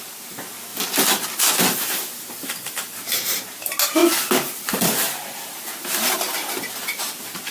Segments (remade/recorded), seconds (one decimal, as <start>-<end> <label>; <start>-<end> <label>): 0.0-0.7 remade; 0.7-1.6 recorded; 1.6-4.0 remade; 4.0-4.7 recorded; 4.7-7.5 remade